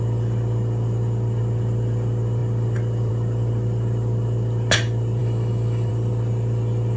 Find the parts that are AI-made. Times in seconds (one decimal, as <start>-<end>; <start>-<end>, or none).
5.2-5.9

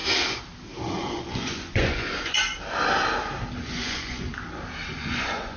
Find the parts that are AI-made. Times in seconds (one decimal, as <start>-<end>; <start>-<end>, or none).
1.0-2.4; 3.6-4.3; 4.9-5.6

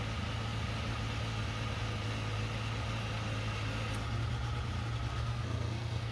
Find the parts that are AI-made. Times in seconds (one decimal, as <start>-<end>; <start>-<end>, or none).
5.1-6.1

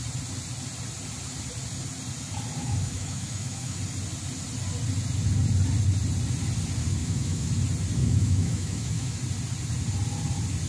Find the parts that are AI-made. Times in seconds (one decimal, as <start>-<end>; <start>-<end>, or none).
2.6-3.8; 7.0-7.5; 8.0-9.2

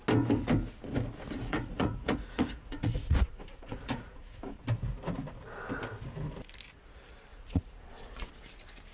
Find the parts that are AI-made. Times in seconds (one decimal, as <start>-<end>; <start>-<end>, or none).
1.4-4.6; 7.3-8.3

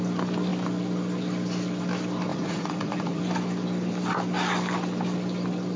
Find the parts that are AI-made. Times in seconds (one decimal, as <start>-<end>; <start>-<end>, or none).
2.3-3.2

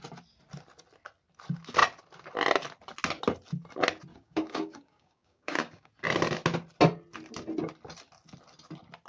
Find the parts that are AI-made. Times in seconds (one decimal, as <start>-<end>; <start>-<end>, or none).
4.1-5.9

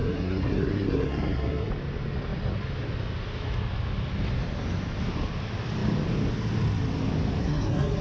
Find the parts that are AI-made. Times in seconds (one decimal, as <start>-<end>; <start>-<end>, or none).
0.0-1.7; 7.4-8.0